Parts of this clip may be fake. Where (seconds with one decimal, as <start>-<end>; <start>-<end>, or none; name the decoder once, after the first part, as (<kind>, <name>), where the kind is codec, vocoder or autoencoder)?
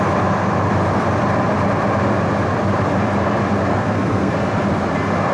3.7-4.3 (codec, SNAC)